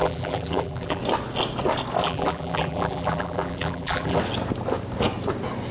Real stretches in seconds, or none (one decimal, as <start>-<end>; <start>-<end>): 1.0-2.0; 4.2-5.7